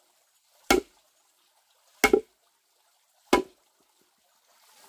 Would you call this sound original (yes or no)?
yes